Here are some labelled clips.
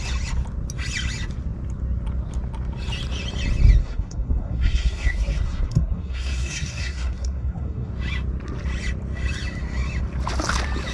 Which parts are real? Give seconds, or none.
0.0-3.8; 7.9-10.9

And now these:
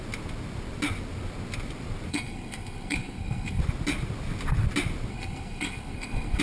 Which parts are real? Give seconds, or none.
0.0-2.1; 3.6-5.1

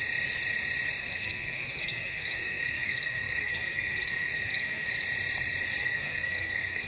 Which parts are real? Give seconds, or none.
0.0-1.0; 4.9-5.8

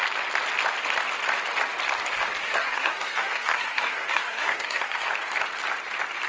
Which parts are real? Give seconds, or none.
0.0-2.4; 5.1-6.3

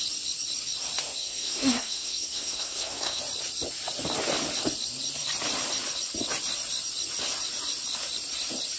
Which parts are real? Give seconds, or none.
0.0-1.2; 3.2-8.8

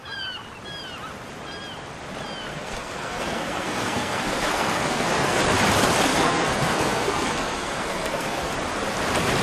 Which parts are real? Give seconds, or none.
0.0-2.5; 5.4-6.1; 8.5-9.4